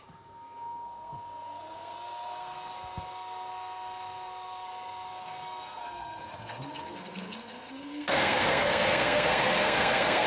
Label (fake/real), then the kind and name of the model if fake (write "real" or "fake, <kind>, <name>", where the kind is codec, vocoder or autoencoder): fake, codec, SNAC